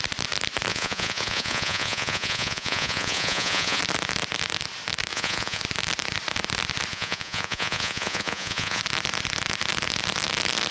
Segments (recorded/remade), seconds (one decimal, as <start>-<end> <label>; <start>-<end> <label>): 0.0-0.7 recorded; 0.7-3.8 remade; 3.8-5.1 recorded; 5.1-5.6 remade; 5.6-6.9 recorded; 6.9-8.8 remade; 8.8-10.7 recorded